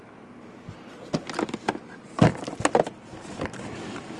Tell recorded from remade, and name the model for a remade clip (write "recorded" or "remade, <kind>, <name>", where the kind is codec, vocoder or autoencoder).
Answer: recorded